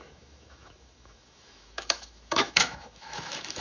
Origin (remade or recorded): remade